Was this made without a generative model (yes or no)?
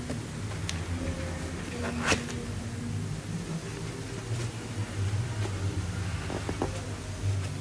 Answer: yes